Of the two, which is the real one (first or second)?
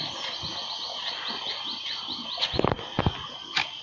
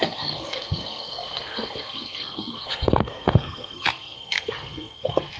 first